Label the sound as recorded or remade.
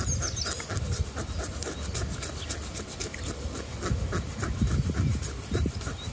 recorded